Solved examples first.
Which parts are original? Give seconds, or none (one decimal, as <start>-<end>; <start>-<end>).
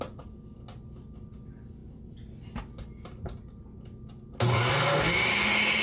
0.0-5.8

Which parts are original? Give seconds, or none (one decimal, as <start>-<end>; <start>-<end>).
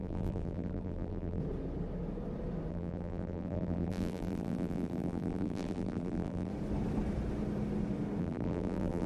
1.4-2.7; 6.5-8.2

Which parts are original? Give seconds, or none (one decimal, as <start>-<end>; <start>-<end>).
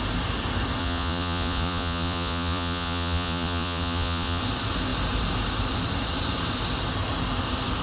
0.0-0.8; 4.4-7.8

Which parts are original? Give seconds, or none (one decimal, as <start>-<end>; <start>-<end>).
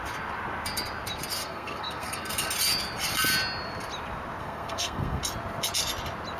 0.0-1.4; 2.5-4.4; 5.2-6.4